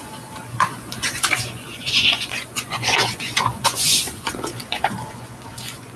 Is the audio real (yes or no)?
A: no